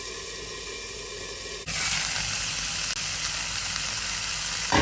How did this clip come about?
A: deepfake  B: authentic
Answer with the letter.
B